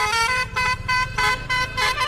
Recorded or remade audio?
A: remade